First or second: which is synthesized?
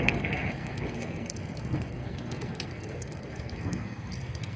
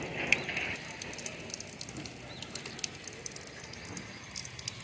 first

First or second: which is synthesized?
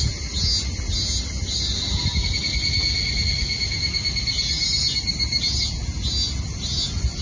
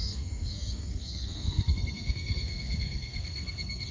second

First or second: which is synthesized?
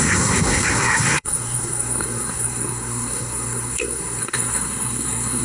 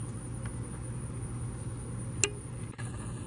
first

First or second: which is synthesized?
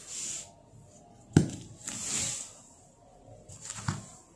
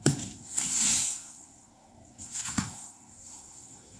second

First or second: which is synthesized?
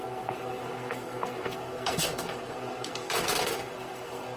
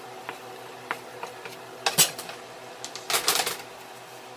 first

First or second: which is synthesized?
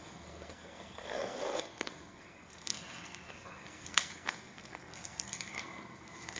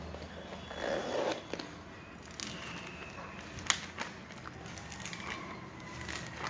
first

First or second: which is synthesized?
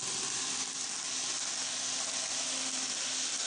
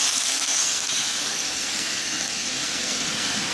second